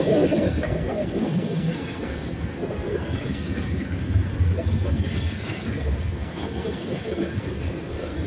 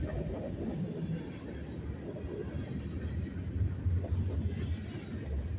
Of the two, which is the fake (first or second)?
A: first